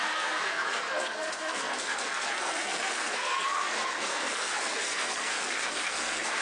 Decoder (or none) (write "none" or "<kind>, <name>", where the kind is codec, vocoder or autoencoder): codec, SNAC